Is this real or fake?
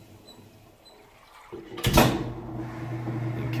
real